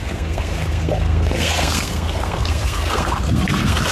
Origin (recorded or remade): remade